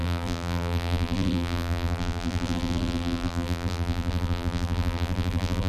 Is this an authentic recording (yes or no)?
no